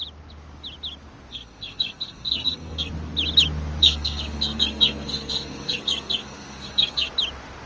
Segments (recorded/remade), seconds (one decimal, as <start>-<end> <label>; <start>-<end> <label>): 0.0-1.3 recorded; 1.3-2.9 remade; 2.9-3.8 recorded; 3.8-7.1 remade; 7.1-7.7 recorded

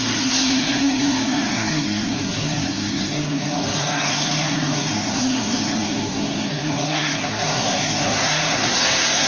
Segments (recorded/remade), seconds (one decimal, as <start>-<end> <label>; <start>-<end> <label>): 0.0-9.3 remade

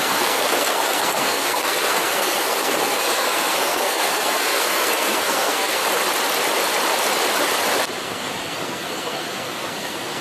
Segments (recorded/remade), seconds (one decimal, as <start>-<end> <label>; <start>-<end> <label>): 0.0-5.8 remade; 5.8-8.0 recorded; 8.0-10.2 remade

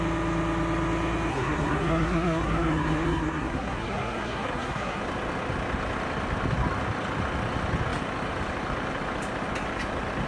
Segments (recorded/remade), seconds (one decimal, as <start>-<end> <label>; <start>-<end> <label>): 0.0-1.3 recorded; 1.3-5.0 remade; 5.0-10.3 recorded

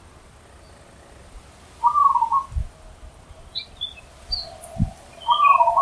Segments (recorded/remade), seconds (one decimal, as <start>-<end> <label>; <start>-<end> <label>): 0.0-5.8 recorded

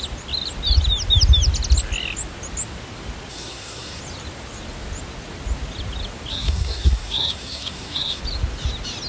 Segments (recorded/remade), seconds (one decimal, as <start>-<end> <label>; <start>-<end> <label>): 0.0-3.3 recorded; 3.3-4.0 remade; 4.0-6.3 recorded; 6.3-8.2 remade; 8.2-9.1 recorded